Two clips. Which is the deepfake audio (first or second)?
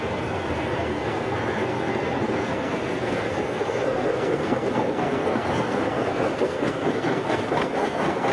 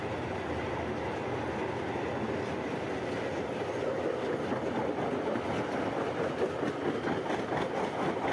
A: first